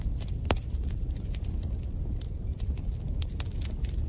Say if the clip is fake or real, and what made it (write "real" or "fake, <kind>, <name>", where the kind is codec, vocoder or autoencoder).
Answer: real